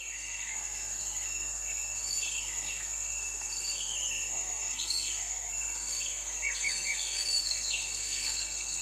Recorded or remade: remade